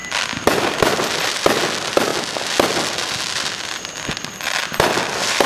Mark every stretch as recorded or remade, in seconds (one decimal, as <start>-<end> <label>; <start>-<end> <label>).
0.0-5.5 recorded